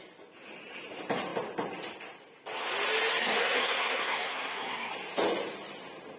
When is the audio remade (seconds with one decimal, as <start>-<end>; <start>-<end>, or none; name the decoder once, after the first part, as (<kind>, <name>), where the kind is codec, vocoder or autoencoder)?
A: 3.2-4.9 (codec, SNAC)